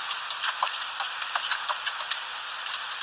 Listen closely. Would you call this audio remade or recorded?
recorded